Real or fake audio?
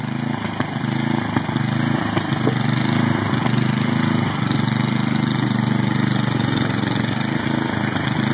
real